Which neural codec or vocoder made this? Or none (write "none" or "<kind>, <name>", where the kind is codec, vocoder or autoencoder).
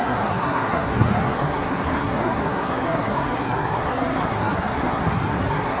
codec, SNAC